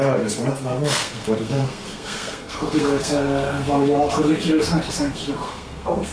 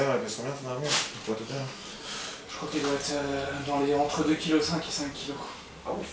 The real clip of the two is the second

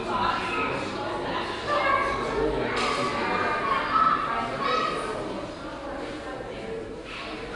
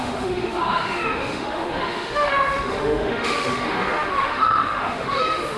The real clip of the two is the first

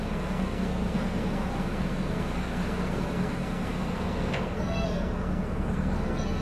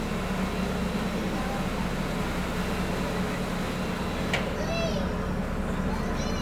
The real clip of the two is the second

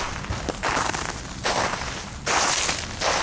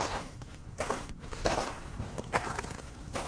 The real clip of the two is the first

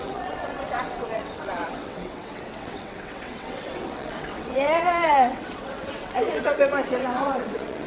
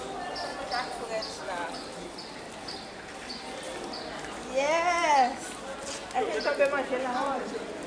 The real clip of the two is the second